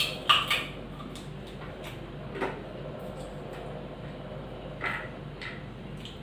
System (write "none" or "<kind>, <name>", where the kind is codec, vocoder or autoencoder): none